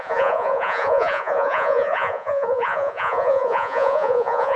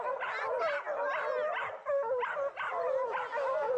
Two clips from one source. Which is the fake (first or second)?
first